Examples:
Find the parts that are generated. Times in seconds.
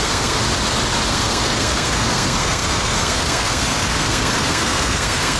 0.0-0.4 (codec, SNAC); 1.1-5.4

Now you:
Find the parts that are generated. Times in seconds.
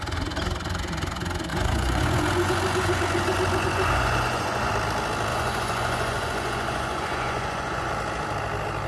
1.5-4.7 (vocoder, Vocos); 5.3-7.9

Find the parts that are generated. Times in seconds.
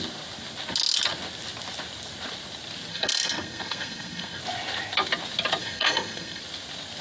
2.9-4.4 (codec, SNAC); 5.6-6.4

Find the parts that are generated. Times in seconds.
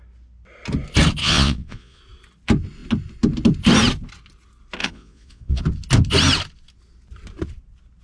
1.2-2.0 (vocoder, Vocos); 4.8-5.6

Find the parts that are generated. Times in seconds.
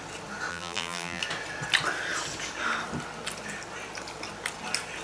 0.5-1.2 (vocoder, BigVGAN v2)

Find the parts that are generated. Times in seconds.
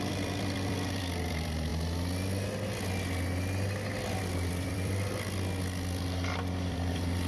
0.0-1.7 (vocoder, BigVGAN v2); 4.2-7.3